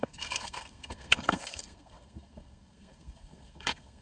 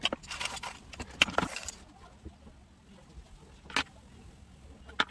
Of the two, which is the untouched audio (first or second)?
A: second